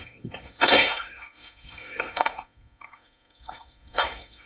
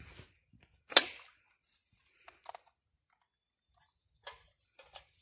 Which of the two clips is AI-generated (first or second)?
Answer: first